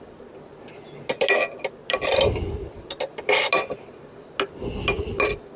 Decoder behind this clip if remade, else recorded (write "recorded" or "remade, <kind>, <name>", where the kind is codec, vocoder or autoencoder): recorded